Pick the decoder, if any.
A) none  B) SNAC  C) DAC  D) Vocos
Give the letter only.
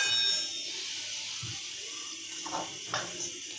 A